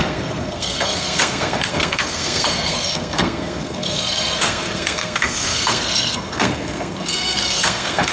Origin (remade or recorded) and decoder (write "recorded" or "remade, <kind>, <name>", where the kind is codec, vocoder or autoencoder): remade, codec, SNAC